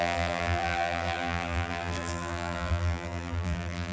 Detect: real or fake fake